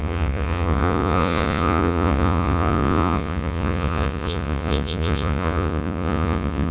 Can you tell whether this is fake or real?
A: fake